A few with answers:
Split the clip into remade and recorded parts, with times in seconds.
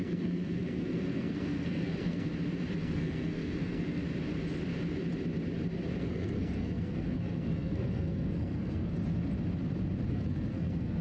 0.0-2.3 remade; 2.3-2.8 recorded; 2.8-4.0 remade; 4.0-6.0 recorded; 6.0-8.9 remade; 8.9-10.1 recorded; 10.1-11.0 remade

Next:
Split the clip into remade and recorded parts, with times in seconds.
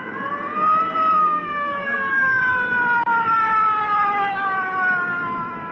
0.0-1.2 recorded; 1.2-2.4 remade; 2.4-5.7 recorded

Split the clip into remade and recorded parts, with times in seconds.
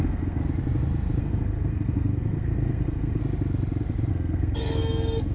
0.0-0.4 remade; 0.4-1.2 recorded; 1.2-3.2 remade; 3.2-4.1 recorded; 4.1-5.3 remade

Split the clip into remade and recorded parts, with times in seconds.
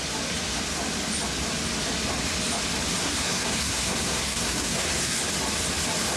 0.0-3.0 recorded; 3.0-5.2 remade; 5.2-6.2 recorded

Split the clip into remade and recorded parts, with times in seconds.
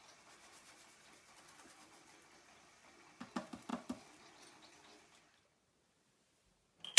0.0-7.0 recorded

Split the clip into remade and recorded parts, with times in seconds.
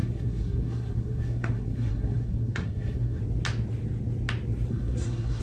0.0-3.2 remade; 3.2-4.7 recorded; 4.7-5.4 remade